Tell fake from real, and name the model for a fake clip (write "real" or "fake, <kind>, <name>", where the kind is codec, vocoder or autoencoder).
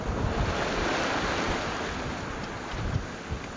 real